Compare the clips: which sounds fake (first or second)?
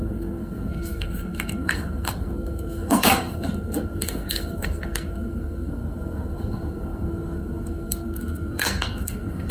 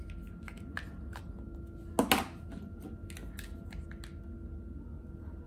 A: first